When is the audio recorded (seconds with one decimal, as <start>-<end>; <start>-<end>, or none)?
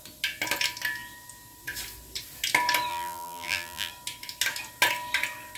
0.0-2.9; 3.9-5.6